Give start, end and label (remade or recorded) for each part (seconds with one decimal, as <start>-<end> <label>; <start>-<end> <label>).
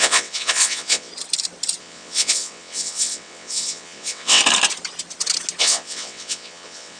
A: 0.0-1.1 remade; 1.1-1.8 recorded; 1.8-4.4 remade; 4.4-5.6 recorded; 5.6-7.0 remade